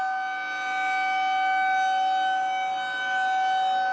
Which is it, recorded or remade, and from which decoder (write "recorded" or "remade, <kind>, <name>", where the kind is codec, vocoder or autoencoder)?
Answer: recorded